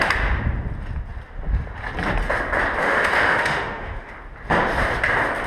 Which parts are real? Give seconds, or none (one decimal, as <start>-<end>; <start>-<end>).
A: 0.0-2.8; 4.1-5.5